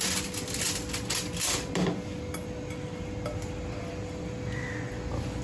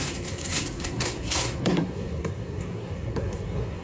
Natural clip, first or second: first